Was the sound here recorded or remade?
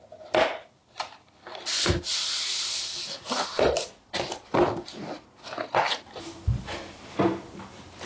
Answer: recorded